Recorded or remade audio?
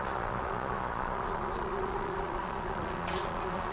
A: remade